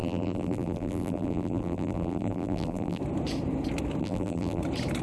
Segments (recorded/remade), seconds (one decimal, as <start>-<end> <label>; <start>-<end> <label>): 0.0-3.0 remade; 3.0-4.0 recorded; 4.0-4.6 remade; 4.6-5.0 recorded